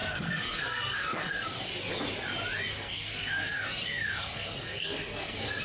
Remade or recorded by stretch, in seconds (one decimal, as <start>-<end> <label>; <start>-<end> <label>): 0.0-1.7 remade; 1.7-2.7 recorded; 2.7-5.6 remade